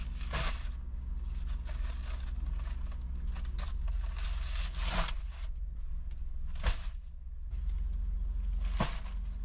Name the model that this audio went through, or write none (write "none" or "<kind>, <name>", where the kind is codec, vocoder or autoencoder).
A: none